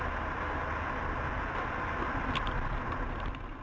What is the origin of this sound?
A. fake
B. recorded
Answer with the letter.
B